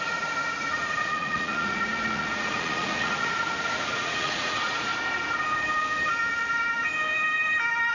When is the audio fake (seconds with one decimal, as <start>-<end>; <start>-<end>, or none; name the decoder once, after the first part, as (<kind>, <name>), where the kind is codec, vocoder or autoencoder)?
0.0-4.9 (vocoder, Vocos)